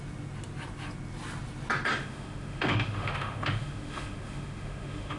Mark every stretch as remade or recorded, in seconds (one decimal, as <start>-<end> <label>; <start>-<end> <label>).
0.0-1.9 recorded; 1.9-5.2 remade